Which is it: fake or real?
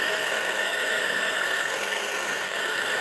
fake